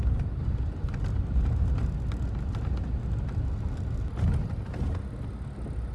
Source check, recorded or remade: recorded